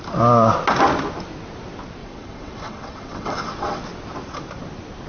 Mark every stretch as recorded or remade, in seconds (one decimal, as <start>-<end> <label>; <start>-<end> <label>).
0.0-2.0 recorded; 2.0-3.8 remade; 3.8-5.1 recorded